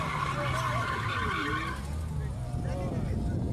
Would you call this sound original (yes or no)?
yes